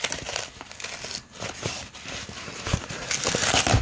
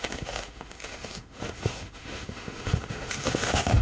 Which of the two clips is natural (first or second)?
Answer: first